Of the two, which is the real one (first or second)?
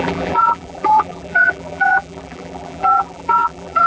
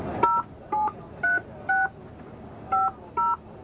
second